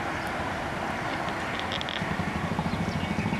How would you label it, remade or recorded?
recorded